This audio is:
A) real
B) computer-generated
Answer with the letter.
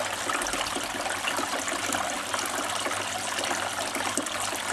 A